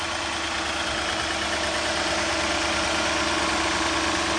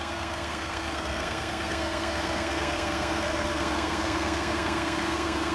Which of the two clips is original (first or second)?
first